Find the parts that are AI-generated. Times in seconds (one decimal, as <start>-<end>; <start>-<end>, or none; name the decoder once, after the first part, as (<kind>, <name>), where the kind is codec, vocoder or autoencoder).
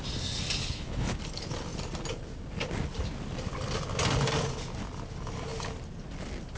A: 0.6-1.2 (codec, HILCodec)